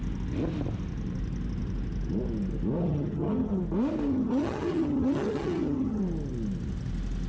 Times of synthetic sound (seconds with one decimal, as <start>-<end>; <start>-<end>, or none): 2.8-3.6; 4.1-6.0